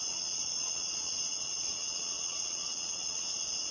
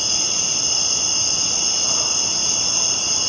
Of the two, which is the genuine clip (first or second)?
second